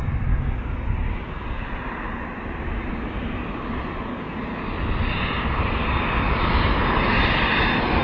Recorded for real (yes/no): yes